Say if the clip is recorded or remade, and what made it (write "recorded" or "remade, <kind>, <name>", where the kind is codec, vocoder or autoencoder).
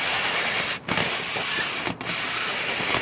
recorded